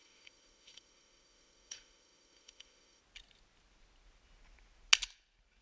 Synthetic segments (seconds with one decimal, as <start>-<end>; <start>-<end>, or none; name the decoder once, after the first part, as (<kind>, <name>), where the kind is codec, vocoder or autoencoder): 0.0-3.0 (autoencoder, DAC-VAE)